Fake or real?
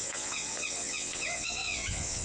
fake